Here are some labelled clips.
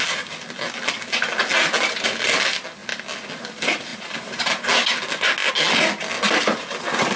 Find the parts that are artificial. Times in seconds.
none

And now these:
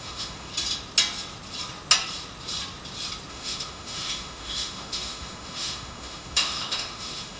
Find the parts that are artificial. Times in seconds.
0.0-0.5 (autoencoder, DAC-VAE); 3.3-7.4